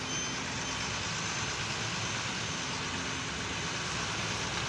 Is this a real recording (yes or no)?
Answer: yes